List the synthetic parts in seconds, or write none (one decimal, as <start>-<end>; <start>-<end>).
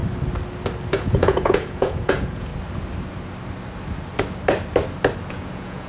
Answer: 0.9-2.5; 5.3-5.9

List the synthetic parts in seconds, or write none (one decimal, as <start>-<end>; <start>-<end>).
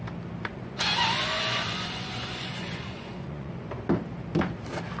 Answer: 0.5-3.5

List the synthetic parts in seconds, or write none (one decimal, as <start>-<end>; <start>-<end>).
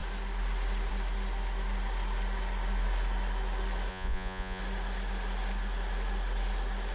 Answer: 3.9-4.6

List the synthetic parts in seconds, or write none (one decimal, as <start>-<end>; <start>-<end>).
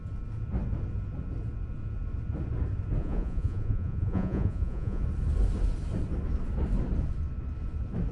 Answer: 3.0-5.0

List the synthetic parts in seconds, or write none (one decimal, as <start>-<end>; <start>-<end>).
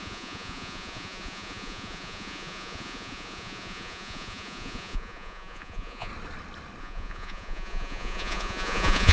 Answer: 0.0-6.1; 6.8-9.1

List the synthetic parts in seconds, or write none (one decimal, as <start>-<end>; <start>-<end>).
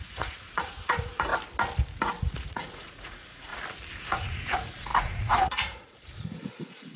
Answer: 0.0-1.3; 2.2-3.5; 4.0-7.0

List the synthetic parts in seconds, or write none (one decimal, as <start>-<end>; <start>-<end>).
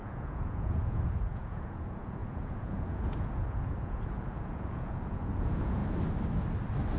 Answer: 0.0-5.8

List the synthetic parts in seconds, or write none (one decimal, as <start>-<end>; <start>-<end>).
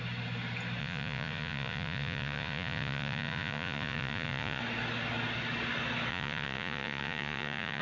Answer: 0.8-4.6; 6.1-7.8